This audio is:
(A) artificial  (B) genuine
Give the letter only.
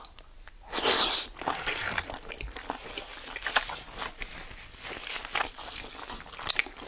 B